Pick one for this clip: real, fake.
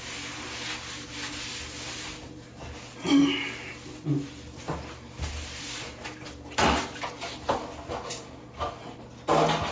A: real